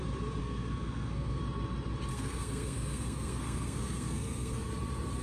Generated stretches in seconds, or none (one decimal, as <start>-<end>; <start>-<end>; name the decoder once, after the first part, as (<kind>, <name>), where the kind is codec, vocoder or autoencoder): 0.4-1.4 (codec, SNAC); 2.1-4.7